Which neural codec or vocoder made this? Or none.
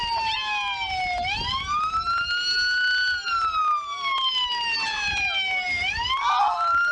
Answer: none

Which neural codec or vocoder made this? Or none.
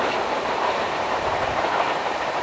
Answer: vocoder, BigVGAN v2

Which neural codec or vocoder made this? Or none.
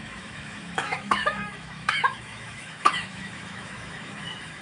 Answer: autoencoder, DAC-VAE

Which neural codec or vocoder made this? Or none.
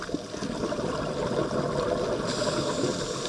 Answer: none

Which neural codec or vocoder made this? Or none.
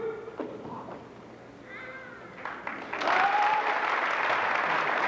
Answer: none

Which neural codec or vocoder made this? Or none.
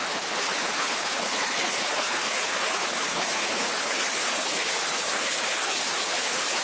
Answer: codec, HILCodec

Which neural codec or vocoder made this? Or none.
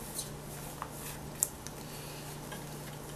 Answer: none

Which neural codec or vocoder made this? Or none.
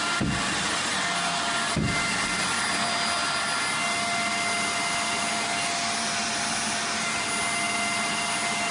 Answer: none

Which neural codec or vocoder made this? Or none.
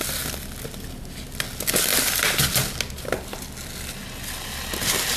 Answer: none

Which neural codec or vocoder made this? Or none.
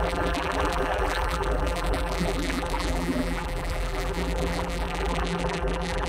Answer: vocoder, BigVGAN v2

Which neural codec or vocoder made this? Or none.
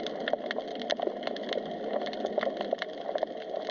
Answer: none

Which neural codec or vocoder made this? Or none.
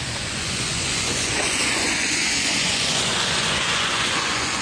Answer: vocoder, Vocos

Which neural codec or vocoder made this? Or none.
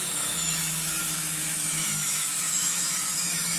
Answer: autoencoder, DAC-VAE